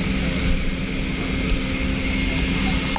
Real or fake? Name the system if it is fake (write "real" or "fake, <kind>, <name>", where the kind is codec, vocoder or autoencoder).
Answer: real